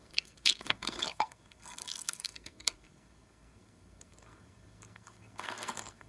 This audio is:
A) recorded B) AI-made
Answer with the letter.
B